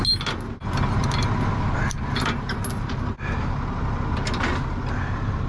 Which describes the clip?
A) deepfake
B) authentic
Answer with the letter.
B